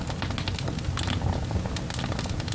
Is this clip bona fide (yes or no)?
yes